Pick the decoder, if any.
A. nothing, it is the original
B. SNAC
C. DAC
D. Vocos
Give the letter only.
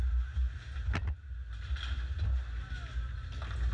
A